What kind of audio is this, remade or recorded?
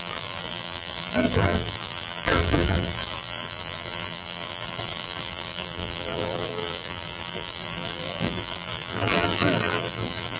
remade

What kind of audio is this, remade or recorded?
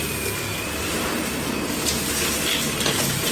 recorded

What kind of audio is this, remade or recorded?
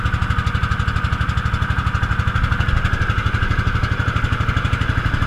recorded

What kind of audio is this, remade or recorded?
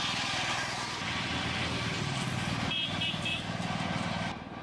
recorded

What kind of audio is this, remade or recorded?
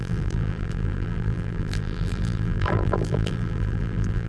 remade